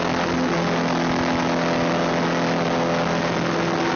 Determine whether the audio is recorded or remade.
recorded